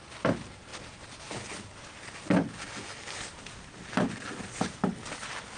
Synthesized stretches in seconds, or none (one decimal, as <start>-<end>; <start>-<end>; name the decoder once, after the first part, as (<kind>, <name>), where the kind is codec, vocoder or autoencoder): none